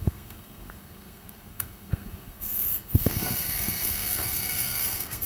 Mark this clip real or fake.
fake